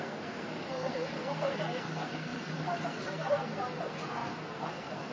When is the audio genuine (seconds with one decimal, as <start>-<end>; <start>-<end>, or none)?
none